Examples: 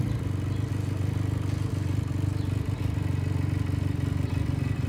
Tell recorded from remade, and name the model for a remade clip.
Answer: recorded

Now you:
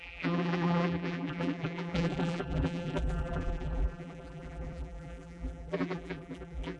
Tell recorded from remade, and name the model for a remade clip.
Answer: remade, vocoder, BigVGAN v2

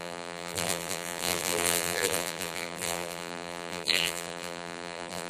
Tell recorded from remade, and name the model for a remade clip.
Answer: remade, vocoder, BigVGAN v2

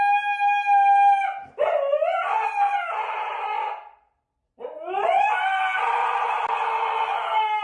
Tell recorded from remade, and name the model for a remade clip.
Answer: recorded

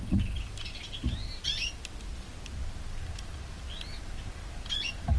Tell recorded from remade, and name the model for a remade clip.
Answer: recorded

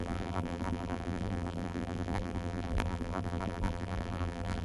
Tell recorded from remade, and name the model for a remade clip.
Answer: remade, vocoder, BigVGAN v2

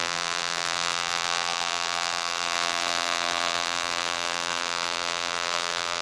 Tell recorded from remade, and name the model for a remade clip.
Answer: remade, vocoder, BigVGAN v2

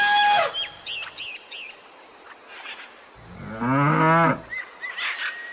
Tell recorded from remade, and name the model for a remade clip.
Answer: recorded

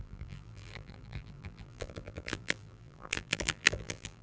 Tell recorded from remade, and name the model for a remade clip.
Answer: remade, vocoder, BigVGAN v2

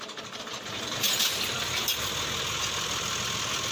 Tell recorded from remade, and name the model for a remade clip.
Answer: recorded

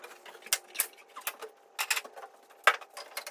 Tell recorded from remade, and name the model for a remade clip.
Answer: recorded